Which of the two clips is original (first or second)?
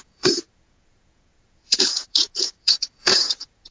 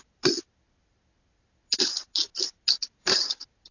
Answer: second